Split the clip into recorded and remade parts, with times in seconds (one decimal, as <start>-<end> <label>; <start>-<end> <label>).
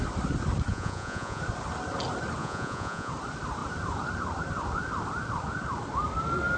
0.0-0.7 recorded; 0.7-1.4 remade; 1.4-2.4 recorded; 2.4-3.1 remade; 3.1-6.6 recorded